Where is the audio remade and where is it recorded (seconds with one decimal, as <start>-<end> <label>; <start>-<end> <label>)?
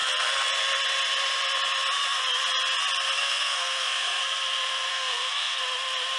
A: 0.0-3.2 recorded; 3.2-4.2 remade; 4.2-4.9 recorded; 4.9-5.6 remade; 5.6-6.2 recorded